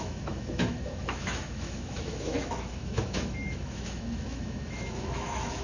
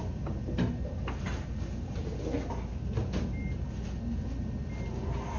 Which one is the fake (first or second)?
first